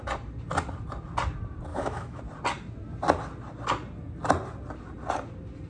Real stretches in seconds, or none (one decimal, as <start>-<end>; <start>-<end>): 0.0-1.7; 2.2-5.7